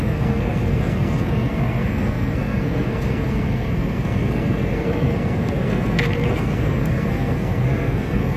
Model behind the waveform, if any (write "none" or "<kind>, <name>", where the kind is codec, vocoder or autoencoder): codec, SNAC